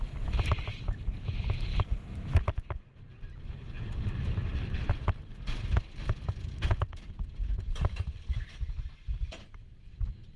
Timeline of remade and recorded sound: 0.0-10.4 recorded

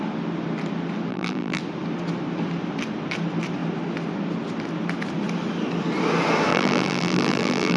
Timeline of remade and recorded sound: 0.0-1.1 recorded; 1.1-1.6 remade; 1.6-6.5 recorded; 6.5-7.8 remade